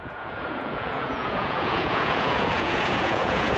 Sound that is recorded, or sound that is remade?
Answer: remade